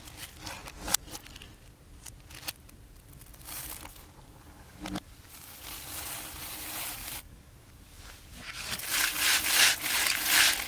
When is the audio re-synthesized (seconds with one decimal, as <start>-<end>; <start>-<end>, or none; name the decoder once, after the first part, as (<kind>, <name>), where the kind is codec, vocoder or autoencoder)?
3.9-6.0 (codec, DAC); 7.0-8.8